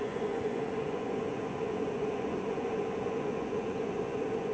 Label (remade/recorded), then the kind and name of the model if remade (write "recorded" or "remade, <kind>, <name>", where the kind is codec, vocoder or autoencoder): remade, vocoder, Vocos